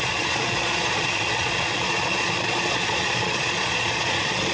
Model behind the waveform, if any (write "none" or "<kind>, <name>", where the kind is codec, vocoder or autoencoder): vocoder, Vocos